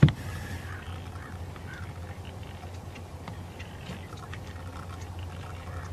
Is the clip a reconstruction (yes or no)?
no